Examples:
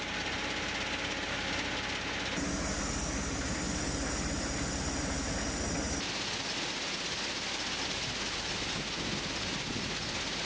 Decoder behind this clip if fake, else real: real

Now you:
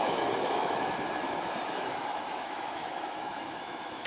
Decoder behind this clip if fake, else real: fake, autoencoder, DAC-VAE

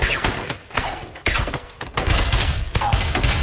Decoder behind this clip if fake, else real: fake, codec, SNAC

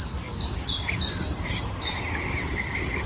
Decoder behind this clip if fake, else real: real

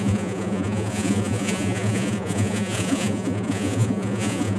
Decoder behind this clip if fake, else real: fake, vocoder, Vocos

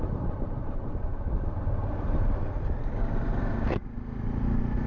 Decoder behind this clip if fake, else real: real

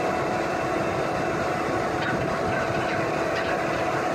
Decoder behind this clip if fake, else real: real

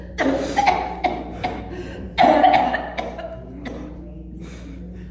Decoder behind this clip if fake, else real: real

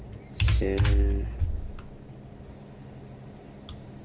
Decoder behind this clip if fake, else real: real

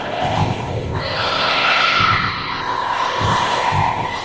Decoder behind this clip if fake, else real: fake, codec, ZipCodec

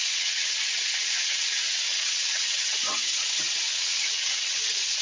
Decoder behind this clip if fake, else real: fake, vocoder, WaveNeXt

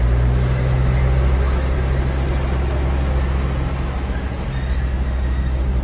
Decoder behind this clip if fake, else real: real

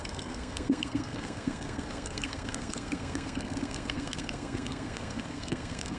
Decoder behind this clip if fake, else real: fake, codec, SNAC